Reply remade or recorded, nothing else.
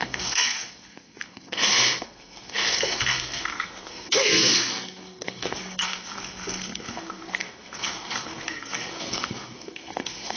remade